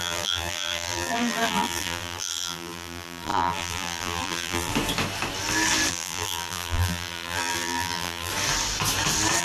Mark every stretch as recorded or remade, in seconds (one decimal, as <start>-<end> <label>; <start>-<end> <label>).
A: 0.0-4.7 remade; 4.7-5.9 recorded; 5.9-8.3 remade; 8.3-9.4 recorded